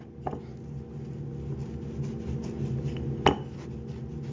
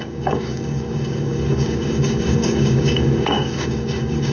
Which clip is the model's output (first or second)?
second